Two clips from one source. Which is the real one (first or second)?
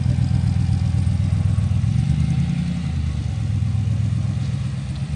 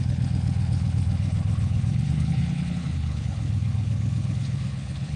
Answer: first